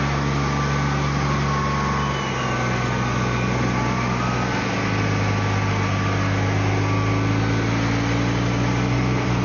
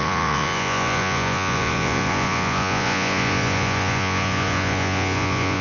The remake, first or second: second